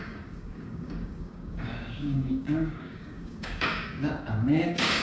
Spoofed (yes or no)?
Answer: yes